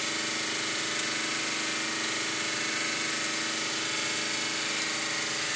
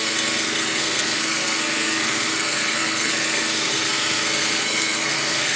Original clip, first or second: first